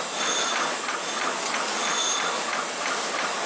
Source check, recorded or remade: recorded